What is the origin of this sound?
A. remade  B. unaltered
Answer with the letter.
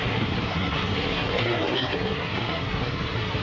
A